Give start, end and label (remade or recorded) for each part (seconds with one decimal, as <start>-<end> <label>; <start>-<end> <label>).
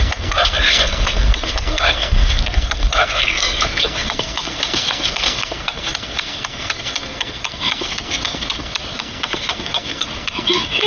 0.0-10.9 remade